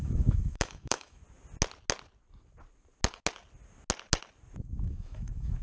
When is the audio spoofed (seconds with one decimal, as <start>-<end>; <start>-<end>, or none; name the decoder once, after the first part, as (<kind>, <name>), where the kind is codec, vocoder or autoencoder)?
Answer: 0.0-1.2 (autoencoder, DAC-VAE); 4.6-5.6